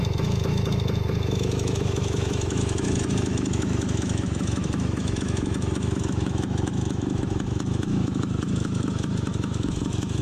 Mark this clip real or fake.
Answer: fake